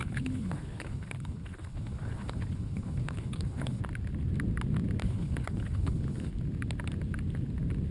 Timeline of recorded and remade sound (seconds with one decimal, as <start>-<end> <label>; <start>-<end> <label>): 0.0-3.8 remade; 3.8-5.0 recorded; 5.0-6.3 remade; 6.3-7.9 recorded